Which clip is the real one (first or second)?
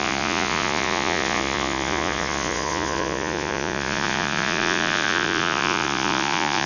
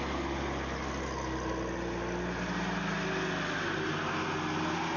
second